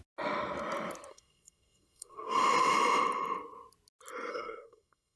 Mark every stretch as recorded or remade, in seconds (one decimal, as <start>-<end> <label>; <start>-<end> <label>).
0.0-1.1 recorded; 1.1-2.4 remade; 2.4-4.3 recorded; 4.3-5.2 remade

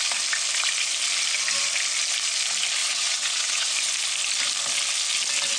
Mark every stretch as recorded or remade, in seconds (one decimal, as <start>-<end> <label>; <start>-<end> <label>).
0.0-2.8 recorded; 2.8-3.7 remade; 3.7-5.6 recorded

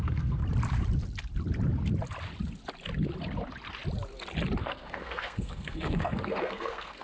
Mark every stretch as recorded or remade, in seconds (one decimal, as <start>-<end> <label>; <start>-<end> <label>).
0.0-0.4 remade; 0.4-4.6 recorded; 4.6-7.0 remade